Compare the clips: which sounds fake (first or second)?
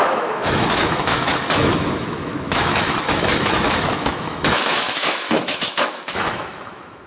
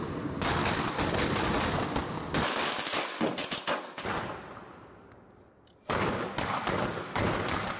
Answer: first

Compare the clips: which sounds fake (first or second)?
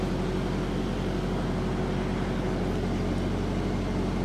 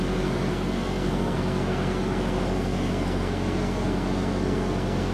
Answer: second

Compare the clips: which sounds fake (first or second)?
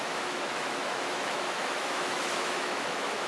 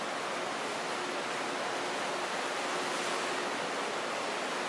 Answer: first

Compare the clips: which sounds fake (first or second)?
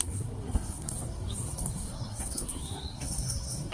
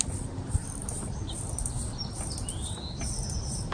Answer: first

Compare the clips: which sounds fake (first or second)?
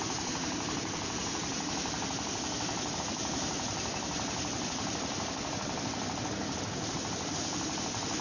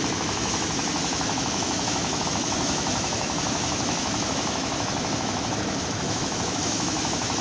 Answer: second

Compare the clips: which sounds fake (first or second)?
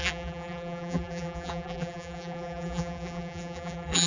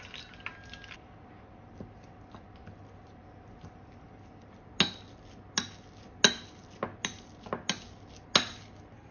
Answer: first